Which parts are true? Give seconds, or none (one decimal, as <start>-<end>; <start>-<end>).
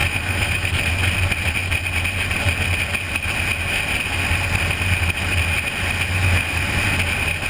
0.7-7.5